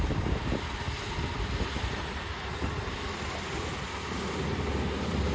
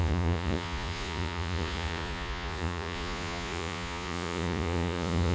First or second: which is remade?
second